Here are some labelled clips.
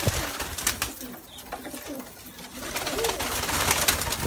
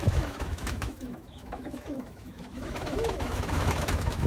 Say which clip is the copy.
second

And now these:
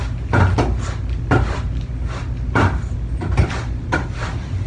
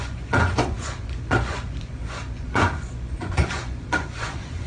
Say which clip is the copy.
second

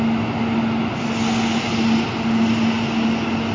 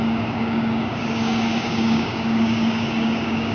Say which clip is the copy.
second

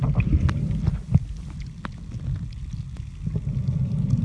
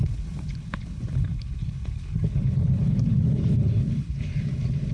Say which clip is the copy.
second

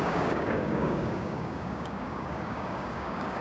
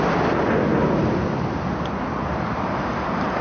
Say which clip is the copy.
first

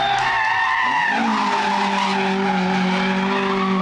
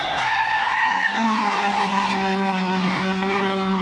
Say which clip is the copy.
second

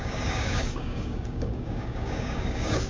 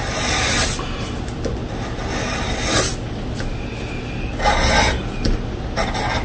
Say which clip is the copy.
first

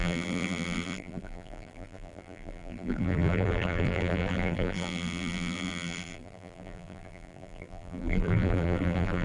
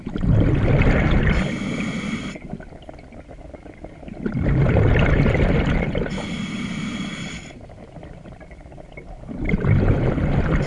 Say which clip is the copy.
first